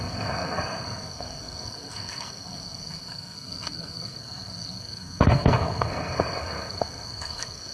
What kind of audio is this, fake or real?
fake